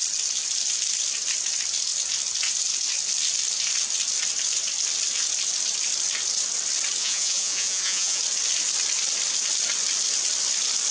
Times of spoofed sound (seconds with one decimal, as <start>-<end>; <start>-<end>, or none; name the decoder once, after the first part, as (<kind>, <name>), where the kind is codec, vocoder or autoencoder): 7.0-8.2 (vocoder, Vocos)